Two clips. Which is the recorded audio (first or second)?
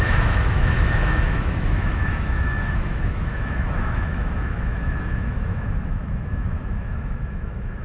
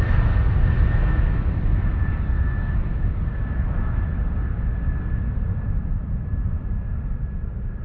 second